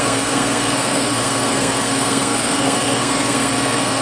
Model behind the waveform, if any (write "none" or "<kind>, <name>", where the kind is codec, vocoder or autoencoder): codec, SNAC